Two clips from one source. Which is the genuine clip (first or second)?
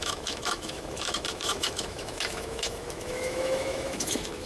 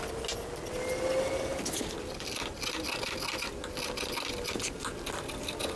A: second